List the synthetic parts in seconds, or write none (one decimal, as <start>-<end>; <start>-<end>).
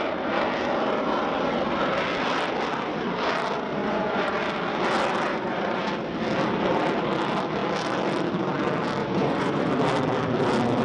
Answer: 3.8-4.3; 5.3-5.9; 9.0-9.7